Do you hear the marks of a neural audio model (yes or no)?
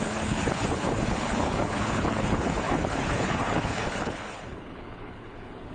yes